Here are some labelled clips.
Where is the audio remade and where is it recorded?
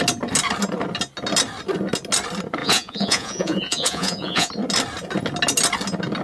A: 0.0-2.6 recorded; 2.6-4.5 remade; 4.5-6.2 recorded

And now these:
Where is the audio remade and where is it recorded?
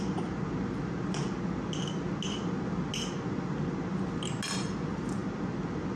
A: 0.0-6.0 recorded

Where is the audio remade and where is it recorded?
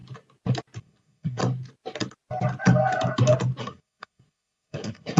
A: 0.0-0.8 recorded; 0.8-1.4 remade; 1.4-3.6 recorded; 3.6-5.2 remade